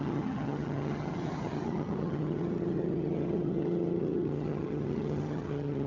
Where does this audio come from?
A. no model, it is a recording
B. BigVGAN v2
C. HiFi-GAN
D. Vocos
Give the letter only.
C